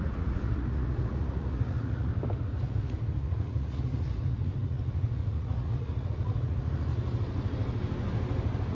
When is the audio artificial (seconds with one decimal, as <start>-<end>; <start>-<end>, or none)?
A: 0.0-2.1; 2.6-6.9